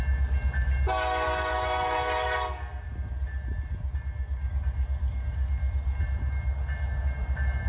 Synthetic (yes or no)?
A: no